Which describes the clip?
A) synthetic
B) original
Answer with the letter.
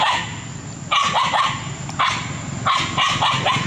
B